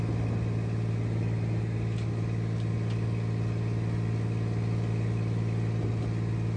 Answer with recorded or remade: recorded